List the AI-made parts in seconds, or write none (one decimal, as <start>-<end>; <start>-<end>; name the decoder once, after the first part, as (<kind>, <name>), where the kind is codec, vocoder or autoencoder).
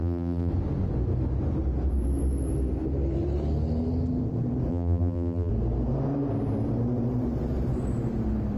0.0-0.5 (vocoder, BigVGAN v2); 4.7-5.5